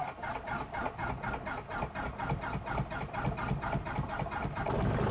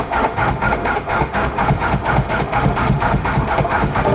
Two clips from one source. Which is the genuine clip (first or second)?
first